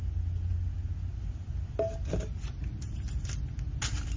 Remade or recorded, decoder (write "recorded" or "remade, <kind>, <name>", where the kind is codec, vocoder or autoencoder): recorded